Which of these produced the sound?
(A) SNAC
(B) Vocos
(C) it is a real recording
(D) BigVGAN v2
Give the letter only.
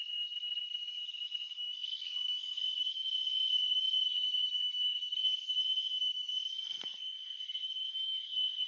A